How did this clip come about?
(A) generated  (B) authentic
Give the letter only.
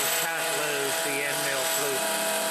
B